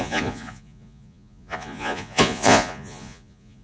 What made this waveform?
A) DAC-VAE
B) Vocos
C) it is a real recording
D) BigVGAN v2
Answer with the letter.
B